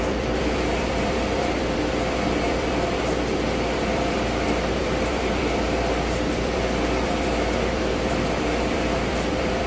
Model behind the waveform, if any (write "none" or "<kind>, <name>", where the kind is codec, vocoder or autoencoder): vocoder, BigVGAN v2